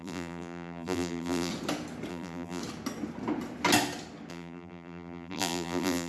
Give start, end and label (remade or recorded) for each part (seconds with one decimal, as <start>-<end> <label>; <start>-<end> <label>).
0.0-1.5 remade; 1.5-2.1 recorded; 2.1-2.6 remade; 2.6-4.3 recorded; 4.3-6.1 remade